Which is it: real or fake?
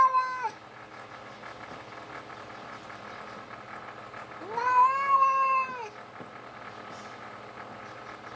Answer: real